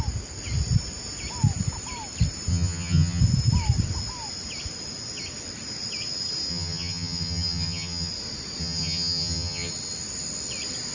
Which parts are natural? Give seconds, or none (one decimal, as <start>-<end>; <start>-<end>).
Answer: 0.0-2.5; 3.2-6.5; 8.1-8.6; 9.7-10.9